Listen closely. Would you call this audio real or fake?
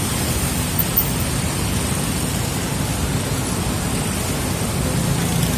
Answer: real